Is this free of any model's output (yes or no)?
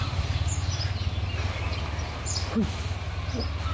yes